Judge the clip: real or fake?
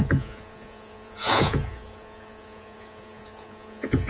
fake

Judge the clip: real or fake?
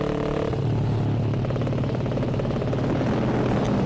real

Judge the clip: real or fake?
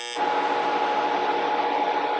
real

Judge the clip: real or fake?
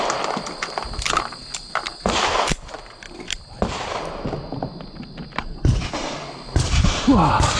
real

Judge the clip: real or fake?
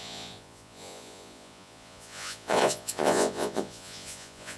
fake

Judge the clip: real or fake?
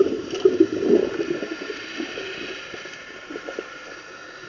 real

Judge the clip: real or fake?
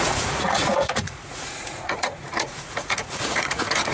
fake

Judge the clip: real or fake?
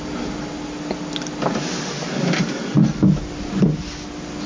real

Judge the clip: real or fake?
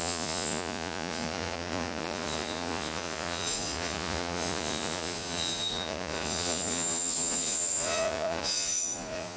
fake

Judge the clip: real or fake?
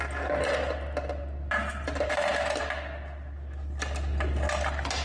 real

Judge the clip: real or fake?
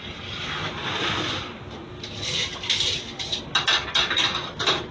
real